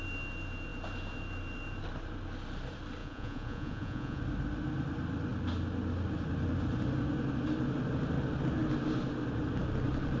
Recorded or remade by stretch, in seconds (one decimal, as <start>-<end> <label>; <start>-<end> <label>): 0.0-3.0 recorded; 3.0-4.2 remade; 4.2-10.2 recorded